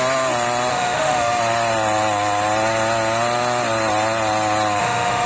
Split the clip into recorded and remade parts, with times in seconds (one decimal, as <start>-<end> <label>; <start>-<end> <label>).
0.0-0.7 recorded; 0.7-1.4 remade; 1.4-4.8 recorded; 4.8-5.3 remade